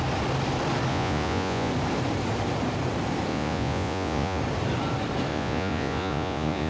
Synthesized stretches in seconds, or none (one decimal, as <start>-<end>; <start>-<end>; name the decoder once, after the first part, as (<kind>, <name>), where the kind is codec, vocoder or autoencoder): 0.9-1.7 (vocoder, Vocos); 3.3-4.4; 5.3-6.7